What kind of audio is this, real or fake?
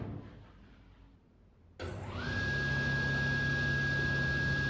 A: real